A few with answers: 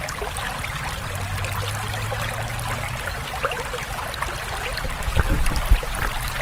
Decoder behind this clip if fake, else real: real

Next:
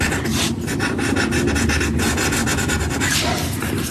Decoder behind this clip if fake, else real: real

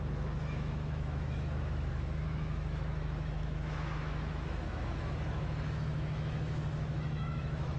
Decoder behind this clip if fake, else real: fake, autoencoder, DAC-VAE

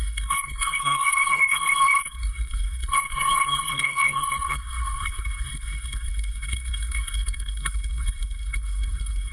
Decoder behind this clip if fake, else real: fake, codec, SNAC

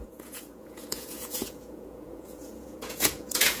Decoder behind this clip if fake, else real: fake, vocoder, Vocos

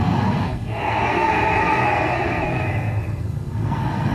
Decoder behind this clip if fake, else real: fake, codec, SNAC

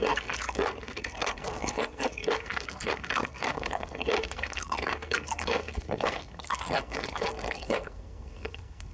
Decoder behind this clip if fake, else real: fake, codec, SNAC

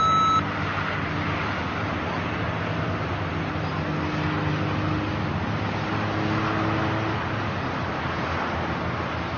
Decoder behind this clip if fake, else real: real